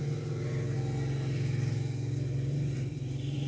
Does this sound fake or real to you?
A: real